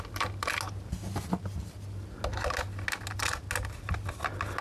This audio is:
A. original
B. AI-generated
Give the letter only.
A